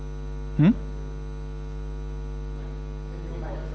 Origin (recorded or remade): recorded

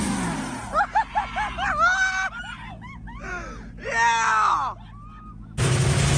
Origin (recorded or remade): recorded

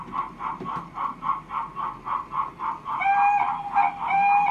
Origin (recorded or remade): recorded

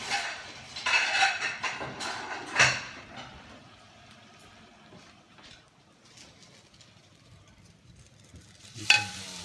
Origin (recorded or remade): remade